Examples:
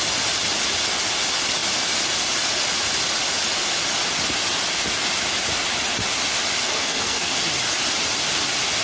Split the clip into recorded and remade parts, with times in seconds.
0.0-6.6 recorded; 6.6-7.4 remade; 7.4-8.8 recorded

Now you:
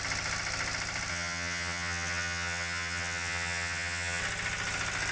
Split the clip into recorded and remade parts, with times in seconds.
0.0-1.1 recorded; 1.1-4.2 remade; 4.2-5.1 recorded